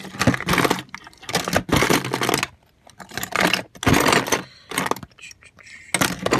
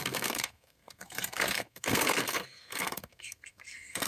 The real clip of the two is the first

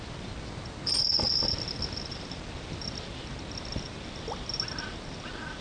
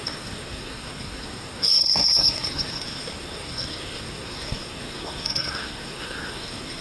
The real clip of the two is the first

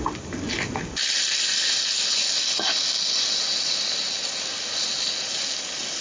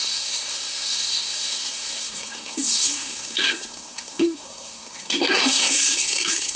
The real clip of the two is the first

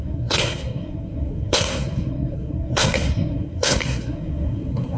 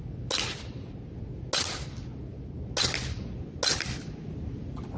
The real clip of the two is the second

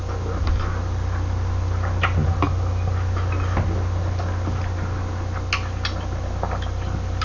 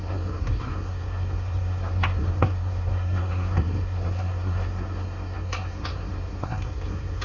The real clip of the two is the first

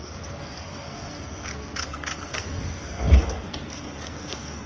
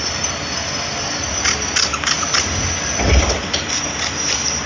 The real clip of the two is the second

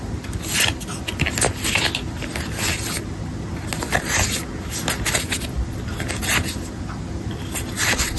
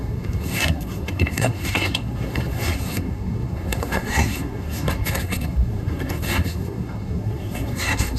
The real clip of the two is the first